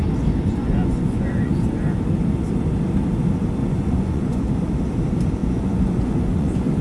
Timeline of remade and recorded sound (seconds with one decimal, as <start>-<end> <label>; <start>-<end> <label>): 0.0-0.6 recorded; 0.6-1.5 remade; 1.5-3.6 recorded; 3.6-4.4 remade; 4.4-5.4 recorded; 5.4-6.8 remade

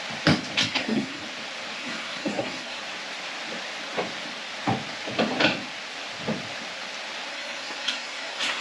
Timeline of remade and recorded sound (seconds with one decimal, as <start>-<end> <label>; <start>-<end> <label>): 0.0-0.6 recorded; 0.6-1.2 remade; 1.2-1.8 recorded; 1.8-2.8 remade; 2.8-7.3 recorded; 7.3-8.6 remade

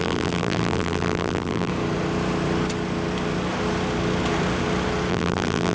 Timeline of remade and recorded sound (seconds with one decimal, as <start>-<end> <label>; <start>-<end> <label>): 0.0-1.7 remade; 1.7-5.1 recorded; 5.1-5.7 remade

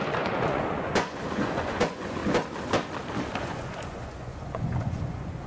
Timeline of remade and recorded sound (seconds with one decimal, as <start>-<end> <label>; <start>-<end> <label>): 0.0-2.2 remade; 2.2-3.4 recorded; 3.4-5.5 remade